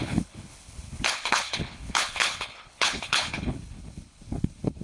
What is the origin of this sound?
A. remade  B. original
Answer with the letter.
A